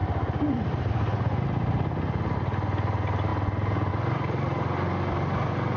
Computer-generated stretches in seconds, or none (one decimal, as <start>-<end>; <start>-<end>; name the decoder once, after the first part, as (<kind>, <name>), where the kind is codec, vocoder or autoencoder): none